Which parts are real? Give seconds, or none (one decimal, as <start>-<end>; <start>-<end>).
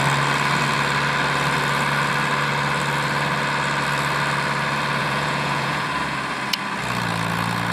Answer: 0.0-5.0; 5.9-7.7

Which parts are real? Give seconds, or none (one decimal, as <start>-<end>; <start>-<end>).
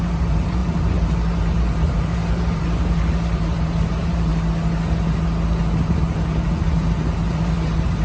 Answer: 4.3-5.9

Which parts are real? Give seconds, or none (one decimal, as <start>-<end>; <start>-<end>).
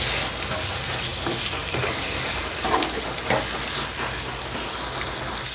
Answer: 0.0-5.5